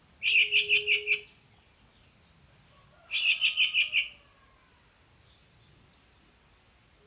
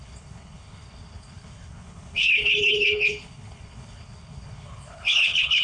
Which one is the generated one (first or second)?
second